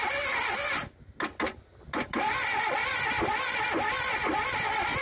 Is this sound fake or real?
real